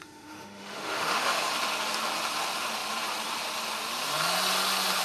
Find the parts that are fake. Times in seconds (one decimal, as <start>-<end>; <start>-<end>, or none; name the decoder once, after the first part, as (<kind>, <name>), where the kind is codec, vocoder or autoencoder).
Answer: 0.0-1.5 (autoencoder, DAC-VAE)